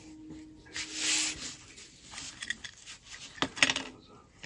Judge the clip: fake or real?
real